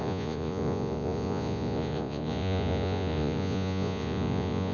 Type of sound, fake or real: fake